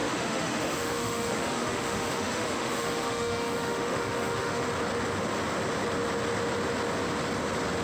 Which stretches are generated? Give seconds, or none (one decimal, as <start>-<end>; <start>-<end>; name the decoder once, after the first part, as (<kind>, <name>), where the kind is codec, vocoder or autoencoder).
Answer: 0.0-4.7 (autoencoder, DAC-VAE)